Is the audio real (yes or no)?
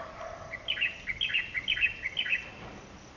yes